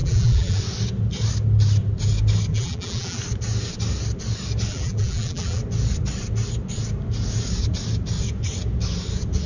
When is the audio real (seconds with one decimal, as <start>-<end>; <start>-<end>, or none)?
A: 0.6-2.5; 3.2-4.7; 5.6-9.5